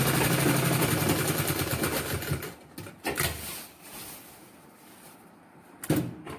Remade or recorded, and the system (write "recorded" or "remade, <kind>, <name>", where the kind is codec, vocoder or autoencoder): recorded